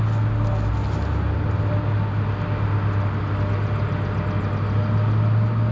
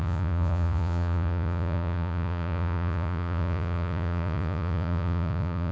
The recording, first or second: first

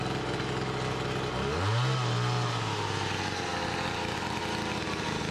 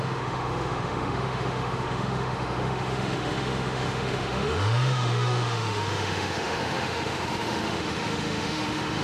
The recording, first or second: first